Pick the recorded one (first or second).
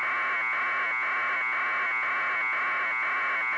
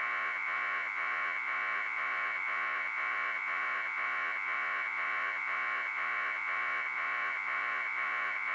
first